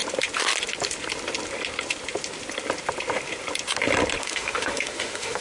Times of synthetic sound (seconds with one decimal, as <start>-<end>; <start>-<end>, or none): 4.2-5.4